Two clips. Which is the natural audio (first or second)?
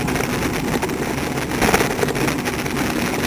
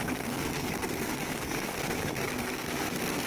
first